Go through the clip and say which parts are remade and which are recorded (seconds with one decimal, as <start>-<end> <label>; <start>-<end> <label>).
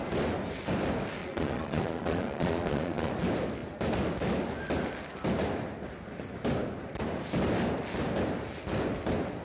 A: 0.0-1.2 recorded; 1.2-3.1 remade; 3.1-9.4 recorded